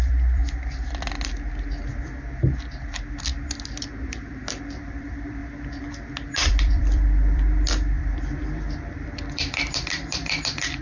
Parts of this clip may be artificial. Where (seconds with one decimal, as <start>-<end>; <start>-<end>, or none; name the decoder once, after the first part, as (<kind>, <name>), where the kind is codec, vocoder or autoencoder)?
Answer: 0.0-0.4 (vocoder, BigVGAN v2); 4.6-5.4; 6.5-10.8